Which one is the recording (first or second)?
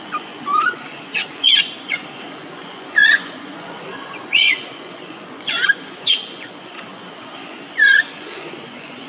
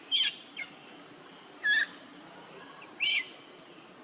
second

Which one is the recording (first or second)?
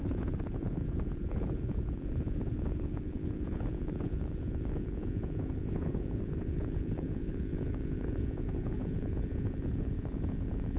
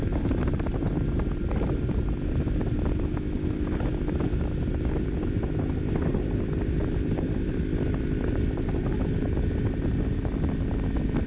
second